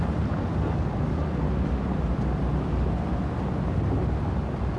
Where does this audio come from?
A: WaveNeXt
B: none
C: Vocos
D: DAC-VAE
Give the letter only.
B